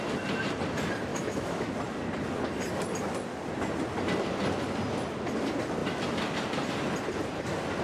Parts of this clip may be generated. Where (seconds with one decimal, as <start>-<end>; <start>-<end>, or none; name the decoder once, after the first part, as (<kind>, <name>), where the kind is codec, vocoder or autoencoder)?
1.1-1.7 (autoencoder, DAC-VAE)